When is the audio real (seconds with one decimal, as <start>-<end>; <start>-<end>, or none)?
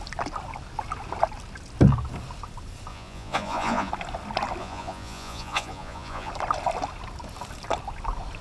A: 0.0-2.9; 3.9-4.6; 6.3-8.4